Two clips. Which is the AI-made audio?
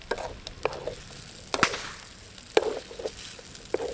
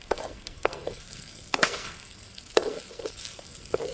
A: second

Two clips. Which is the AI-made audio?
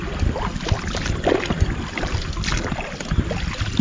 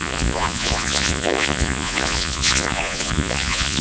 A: second